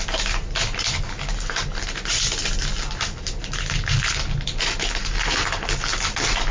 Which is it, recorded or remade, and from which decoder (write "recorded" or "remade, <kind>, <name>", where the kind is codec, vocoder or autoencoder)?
recorded